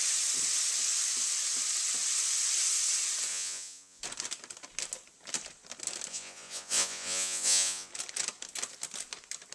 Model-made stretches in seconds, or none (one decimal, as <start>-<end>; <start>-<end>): 3.3-4.0; 6.1-7.9